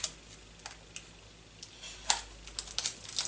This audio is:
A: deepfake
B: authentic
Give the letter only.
B